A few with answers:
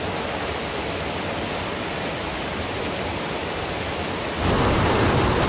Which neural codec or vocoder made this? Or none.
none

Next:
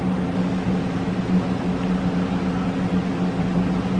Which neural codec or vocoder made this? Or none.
none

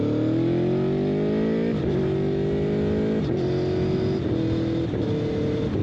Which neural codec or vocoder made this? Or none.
none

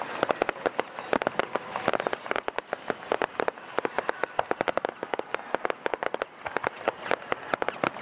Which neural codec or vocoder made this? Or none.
none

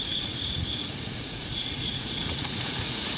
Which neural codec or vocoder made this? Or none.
vocoder, Vocos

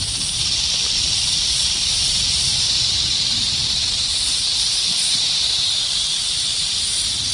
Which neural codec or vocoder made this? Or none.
vocoder, BigVGAN v2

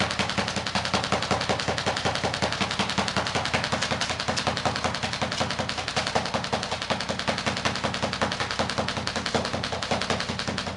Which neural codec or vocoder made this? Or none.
none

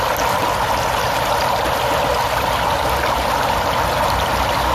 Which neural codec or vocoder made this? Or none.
none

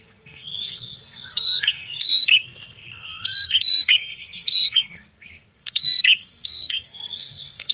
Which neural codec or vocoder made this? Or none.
codec, SNAC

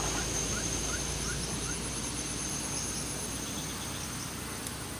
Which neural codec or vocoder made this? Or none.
none